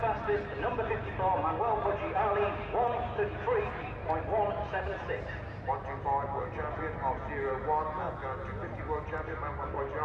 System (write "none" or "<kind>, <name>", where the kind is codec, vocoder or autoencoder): none